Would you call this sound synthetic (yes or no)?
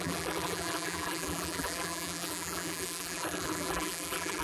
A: yes